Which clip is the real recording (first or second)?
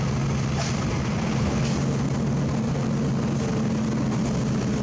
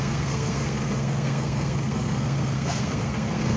first